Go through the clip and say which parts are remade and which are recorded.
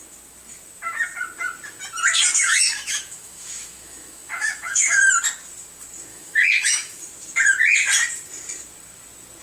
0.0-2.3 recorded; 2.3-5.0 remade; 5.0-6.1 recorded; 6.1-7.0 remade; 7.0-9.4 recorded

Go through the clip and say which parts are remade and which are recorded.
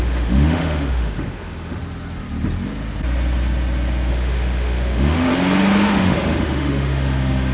0.0-1.8 remade; 1.8-4.1 recorded; 4.1-5.3 remade; 5.3-5.9 recorded; 5.9-7.5 remade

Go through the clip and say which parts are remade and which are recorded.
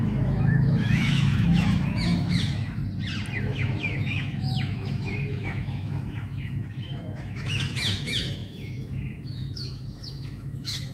0.0-2.8 remade; 2.8-3.4 recorded; 3.4-10.9 remade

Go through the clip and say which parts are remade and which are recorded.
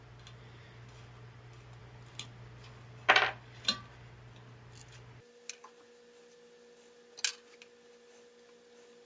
0.0-9.1 recorded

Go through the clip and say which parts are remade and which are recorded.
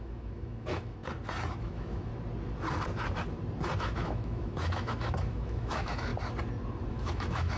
0.0-1.0 remade; 1.0-1.5 recorded; 1.5-2.1 remade; 2.1-3.8 recorded; 3.8-6.1 remade; 6.1-6.9 recorded; 6.9-7.6 remade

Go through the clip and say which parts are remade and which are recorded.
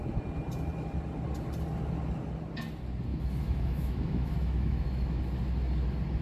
0.0-3.1 recorded; 3.1-5.2 remade; 5.2-6.2 recorded